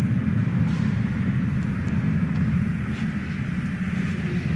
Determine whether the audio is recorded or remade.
recorded